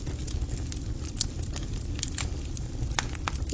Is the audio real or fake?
real